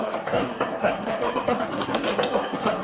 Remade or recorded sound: remade